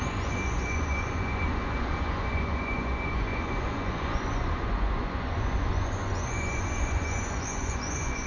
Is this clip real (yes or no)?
no